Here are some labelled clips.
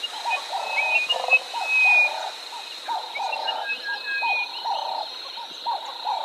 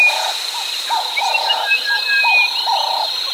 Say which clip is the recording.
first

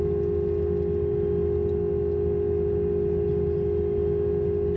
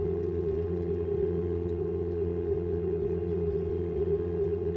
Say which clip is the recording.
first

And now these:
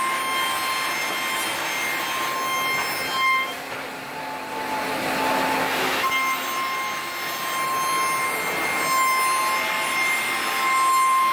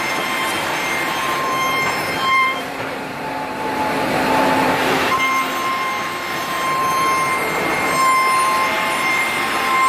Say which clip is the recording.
first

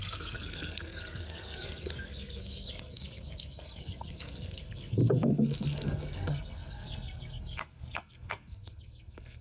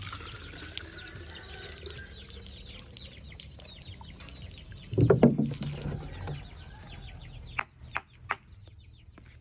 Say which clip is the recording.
second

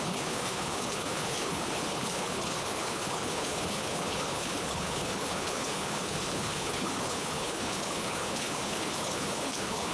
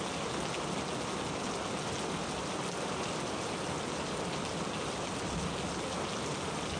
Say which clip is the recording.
second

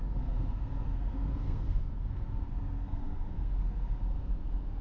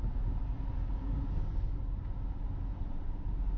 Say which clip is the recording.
second